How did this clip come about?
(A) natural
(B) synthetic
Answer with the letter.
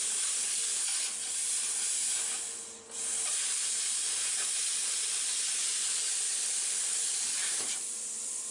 B